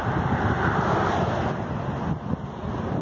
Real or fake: real